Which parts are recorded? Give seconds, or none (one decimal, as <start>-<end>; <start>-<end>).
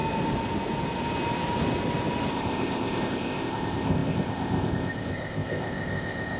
0.0-2.3